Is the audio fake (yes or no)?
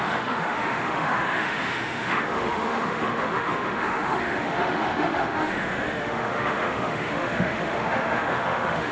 yes